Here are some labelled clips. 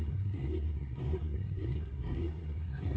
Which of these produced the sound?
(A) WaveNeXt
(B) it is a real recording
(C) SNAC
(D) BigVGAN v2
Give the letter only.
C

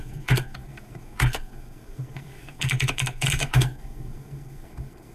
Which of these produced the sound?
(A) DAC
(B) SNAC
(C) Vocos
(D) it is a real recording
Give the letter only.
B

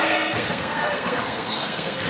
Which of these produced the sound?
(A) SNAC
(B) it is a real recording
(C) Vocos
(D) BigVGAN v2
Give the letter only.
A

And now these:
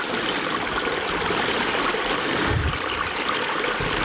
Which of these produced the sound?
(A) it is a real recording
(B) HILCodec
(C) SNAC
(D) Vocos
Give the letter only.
A